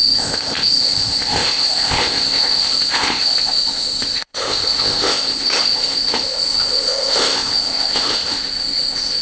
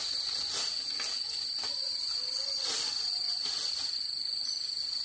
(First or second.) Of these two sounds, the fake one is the first